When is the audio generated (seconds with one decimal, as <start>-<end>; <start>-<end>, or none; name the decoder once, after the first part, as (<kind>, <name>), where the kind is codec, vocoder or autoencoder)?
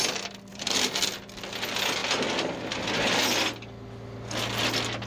0.5-1.0 (vocoder, BigVGAN v2)